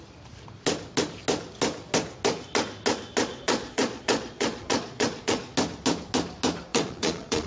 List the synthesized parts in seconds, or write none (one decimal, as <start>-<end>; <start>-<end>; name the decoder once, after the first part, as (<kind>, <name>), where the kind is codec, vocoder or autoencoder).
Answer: 3.3-5.4 (vocoder, Vocos); 6.7-7.5